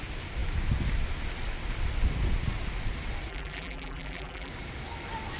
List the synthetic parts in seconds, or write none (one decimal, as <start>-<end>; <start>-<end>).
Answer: 3.3-4.5

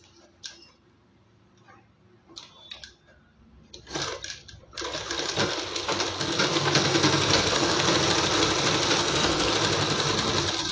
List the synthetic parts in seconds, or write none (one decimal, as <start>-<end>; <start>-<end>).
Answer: 6.5-7.9; 9.0-9.5

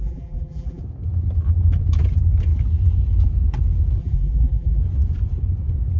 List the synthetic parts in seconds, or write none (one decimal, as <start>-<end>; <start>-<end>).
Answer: 0.0-0.8; 4.0-4.8

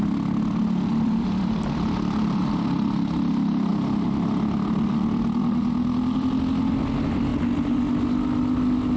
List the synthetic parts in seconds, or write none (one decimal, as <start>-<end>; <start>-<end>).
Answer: 0.9-2.5; 3.7-5.4

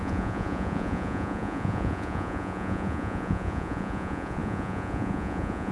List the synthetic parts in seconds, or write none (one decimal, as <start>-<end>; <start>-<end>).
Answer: 0.0-5.7